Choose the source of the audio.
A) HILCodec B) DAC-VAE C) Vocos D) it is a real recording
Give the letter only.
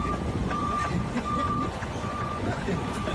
C